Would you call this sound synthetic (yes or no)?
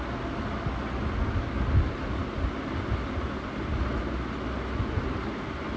no